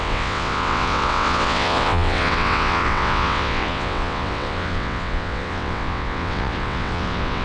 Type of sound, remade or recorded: remade